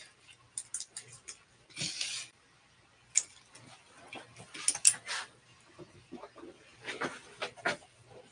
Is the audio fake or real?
real